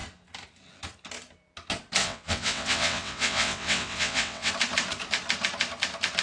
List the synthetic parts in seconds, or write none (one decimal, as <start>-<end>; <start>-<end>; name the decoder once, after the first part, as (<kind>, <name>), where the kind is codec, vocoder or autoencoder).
2.0-4.5 (vocoder, WaveNeXt)